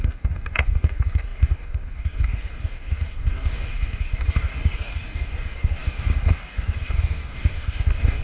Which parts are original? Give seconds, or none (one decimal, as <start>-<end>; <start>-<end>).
none